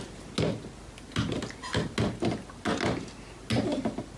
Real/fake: real